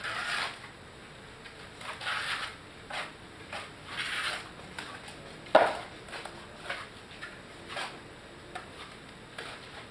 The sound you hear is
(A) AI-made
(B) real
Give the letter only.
B